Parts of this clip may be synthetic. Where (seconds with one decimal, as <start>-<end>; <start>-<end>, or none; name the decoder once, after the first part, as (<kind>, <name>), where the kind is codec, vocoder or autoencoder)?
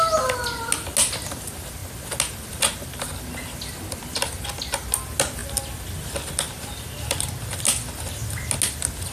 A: none